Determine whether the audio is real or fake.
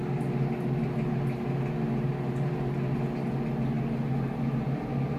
real